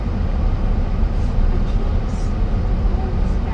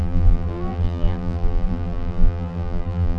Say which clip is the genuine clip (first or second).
first